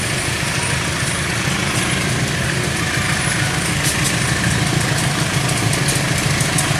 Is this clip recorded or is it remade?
recorded